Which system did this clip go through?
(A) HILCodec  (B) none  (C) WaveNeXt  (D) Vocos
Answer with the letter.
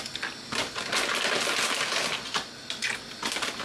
B